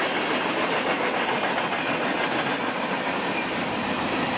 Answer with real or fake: real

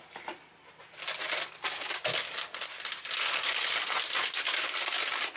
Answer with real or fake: real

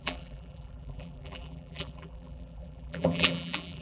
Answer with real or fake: fake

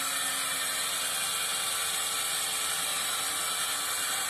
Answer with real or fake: real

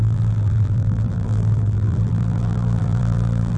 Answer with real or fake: fake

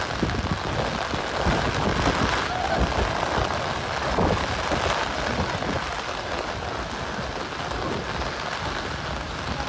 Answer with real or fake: real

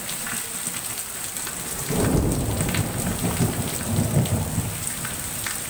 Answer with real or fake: fake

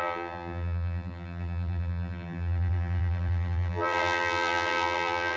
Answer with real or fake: fake